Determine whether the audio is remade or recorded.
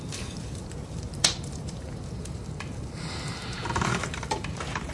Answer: remade